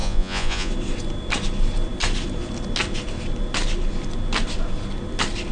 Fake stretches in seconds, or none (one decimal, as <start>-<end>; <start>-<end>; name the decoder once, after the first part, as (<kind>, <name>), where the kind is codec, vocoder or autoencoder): 0.0-0.7 (vocoder, Vocos)